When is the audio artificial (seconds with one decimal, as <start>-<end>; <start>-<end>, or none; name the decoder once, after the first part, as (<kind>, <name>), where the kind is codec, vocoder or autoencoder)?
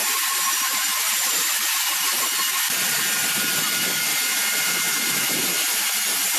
0.0-2.2 (vocoder, BigVGAN v2); 4.1-5.4